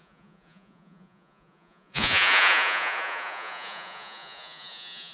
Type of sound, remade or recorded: remade